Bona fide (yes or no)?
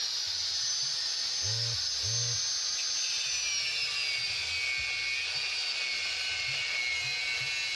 yes